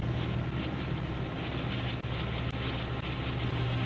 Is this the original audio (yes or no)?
yes